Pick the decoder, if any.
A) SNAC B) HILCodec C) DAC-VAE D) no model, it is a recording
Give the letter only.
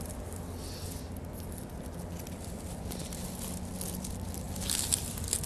D